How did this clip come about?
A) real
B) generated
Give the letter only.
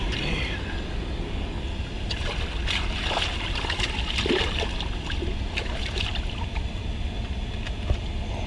A